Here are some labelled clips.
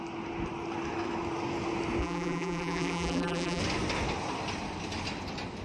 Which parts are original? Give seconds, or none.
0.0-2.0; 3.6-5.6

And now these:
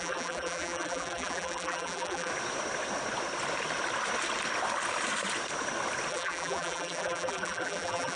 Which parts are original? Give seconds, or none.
2.3-6.1

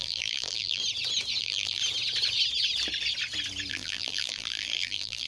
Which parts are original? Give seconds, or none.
0.8-1.4; 1.8-3.7

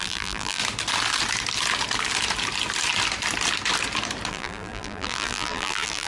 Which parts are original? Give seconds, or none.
0.6-4.3

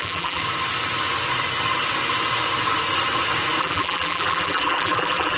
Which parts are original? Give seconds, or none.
0.4-3.6

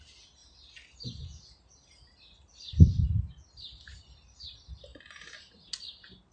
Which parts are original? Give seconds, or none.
0.0-0.4; 3.3-4.9; 5.7-6.3

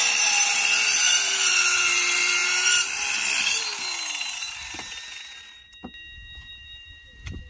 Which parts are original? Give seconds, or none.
5.3-6.5

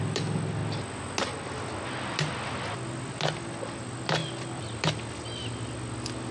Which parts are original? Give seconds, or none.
0.0-6.3